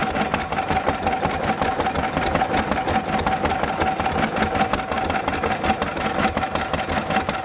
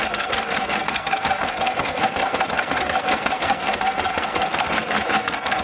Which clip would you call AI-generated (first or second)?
second